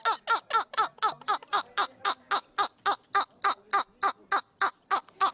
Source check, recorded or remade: recorded